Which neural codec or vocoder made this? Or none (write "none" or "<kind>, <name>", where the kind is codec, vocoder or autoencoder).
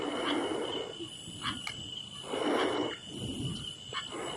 none